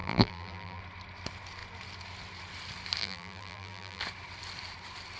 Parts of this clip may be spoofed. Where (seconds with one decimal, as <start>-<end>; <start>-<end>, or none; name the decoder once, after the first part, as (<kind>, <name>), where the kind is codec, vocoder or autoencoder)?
0.0-0.8 (vocoder, BigVGAN v2); 3.0-4.0